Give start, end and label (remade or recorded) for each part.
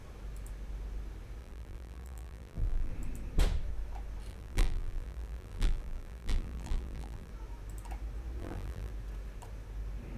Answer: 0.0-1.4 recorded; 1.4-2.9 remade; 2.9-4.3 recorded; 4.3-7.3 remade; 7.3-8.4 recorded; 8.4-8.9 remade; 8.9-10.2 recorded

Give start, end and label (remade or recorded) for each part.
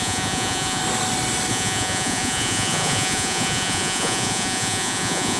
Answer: 0.0-0.8 remade; 0.8-1.5 recorded; 1.5-5.4 remade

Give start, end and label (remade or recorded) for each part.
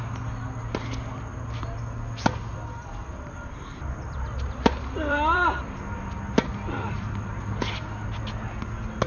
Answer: 0.0-2.5 recorded; 2.5-7.6 remade; 7.6-9.1 recorded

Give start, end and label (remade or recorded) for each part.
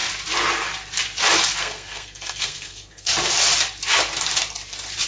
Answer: 0.0-1.6 recorded; 1.6-3.1 remade; 3.1-5.1 recorded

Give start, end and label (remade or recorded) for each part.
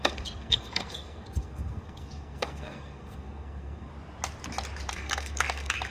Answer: 0.0-3.9 remade; 3.9-4.9 recorded; 4.9-5.9 remade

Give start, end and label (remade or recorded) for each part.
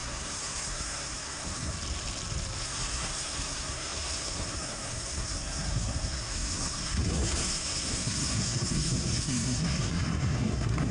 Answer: 0.0-1.7 remade; 1.7-2.6 recorded; 2.6-10.9 remade